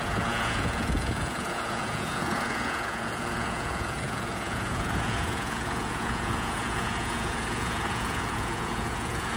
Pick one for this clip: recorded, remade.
remade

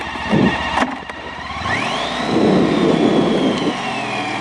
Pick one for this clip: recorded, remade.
recorded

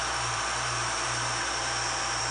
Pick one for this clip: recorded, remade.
remade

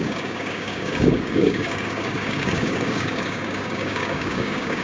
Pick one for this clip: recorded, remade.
remade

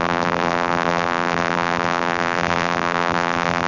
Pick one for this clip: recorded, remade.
remade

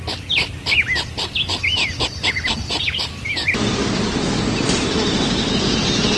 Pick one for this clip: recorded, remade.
recorded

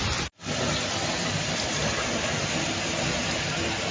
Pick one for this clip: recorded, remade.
recorded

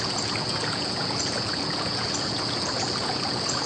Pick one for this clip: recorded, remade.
remade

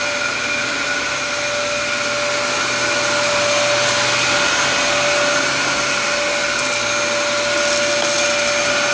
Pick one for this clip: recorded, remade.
recorded